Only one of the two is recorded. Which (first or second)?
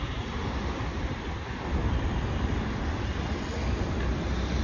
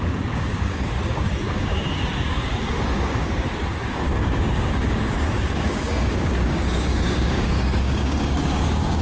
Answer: first